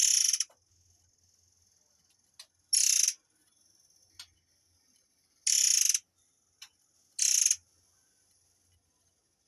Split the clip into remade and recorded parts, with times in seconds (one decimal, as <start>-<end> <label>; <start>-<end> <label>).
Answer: 0.0-9.5 recorded